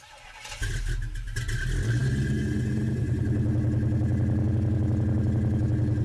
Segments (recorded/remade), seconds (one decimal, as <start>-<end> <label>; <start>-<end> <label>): 0.0-6.0 recorded